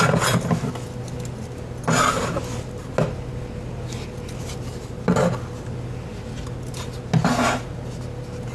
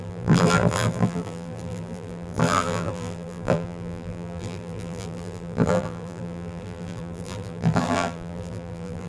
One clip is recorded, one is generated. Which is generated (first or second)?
second